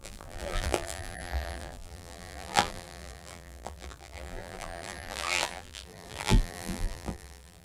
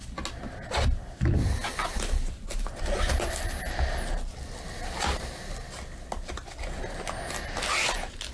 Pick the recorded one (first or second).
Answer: second